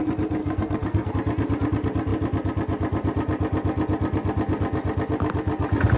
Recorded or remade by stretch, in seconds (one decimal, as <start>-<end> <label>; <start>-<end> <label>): 0.0-0.4 recorded; 0.4-1.1 remade; 1.1-6.0 recorded